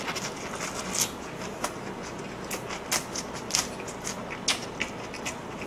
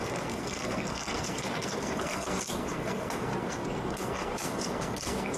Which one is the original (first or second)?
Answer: first